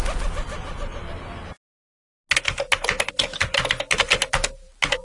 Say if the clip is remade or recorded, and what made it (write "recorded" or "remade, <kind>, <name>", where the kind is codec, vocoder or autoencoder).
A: recorded